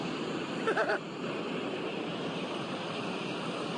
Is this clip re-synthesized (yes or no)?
no